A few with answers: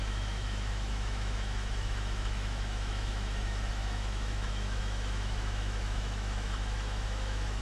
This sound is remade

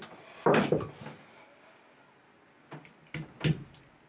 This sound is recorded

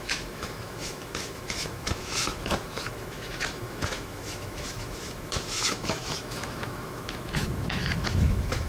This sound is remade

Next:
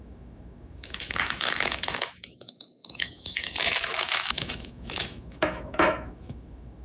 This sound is remade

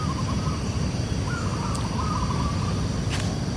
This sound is recorded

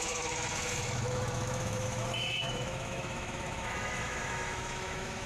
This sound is remade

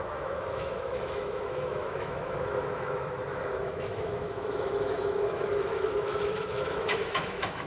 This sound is remade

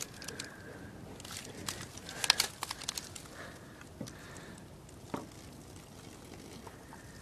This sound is recorded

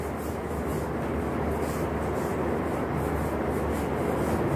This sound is recorded